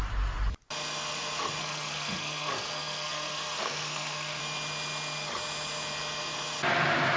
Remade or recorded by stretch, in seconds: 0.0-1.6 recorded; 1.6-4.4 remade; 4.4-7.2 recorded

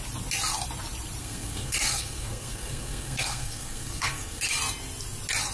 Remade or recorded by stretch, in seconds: 0.0-1.2 recorded; 1.2-4.5 remade; 4.5-5.5 recorded

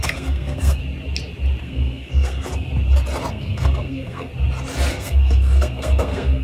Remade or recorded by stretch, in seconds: 0.0-0.8 remade; 0.8-1.6 recorded; 1.6-2.7 remade; 2.7-3.3 recorded; 3.3-4.3 remade; 4.3-4.9 recorded; 4.9-6.4 remade